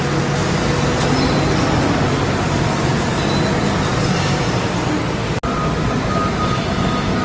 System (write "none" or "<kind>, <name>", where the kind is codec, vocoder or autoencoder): none